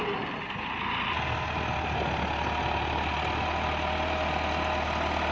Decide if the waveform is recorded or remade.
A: recorded